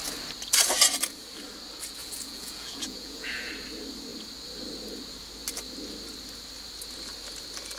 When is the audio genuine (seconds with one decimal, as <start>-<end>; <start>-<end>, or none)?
0.0-2.0; 3.5-7.8